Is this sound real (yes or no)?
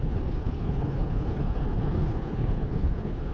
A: no